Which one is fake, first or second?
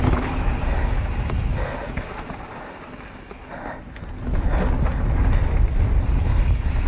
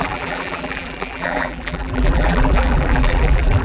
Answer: second